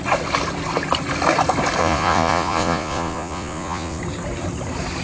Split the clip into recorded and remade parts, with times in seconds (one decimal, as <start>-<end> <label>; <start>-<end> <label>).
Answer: 0.0-1.8 recorded; 1.8-4.0 remade; 4.0-5.0 recorded